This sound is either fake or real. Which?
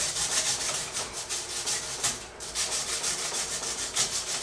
real